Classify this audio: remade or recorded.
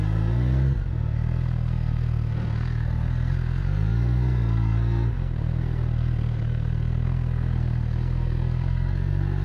remade